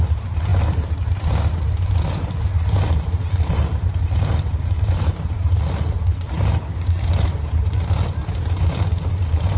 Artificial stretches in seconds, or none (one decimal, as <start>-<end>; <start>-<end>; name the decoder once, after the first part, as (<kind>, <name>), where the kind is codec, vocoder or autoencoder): 0.0-0.5 (vocoder, BigVGAN v2); 2.1-9.6